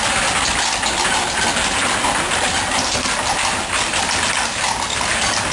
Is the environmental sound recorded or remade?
recorded